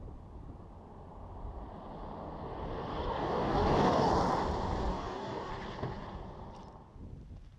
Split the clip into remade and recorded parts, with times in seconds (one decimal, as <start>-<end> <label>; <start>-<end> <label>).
0.0-2.9 recorded; 2.9-4.1 remade; 4.1-4.9 recorded; 4.9-5.5 remade; 5.5-7.6 recorded